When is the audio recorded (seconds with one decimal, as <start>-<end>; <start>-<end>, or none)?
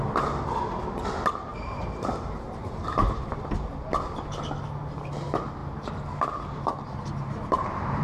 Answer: 0.0-1.5; 3.3-5.6